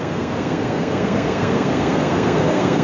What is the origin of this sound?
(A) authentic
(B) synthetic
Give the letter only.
B